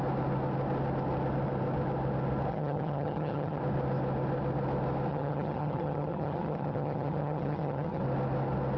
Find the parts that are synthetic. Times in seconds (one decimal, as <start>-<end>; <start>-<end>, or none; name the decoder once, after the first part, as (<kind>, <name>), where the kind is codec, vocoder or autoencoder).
2.5-3.6 (vocoder, HiFi-GAN); 5.1-8.0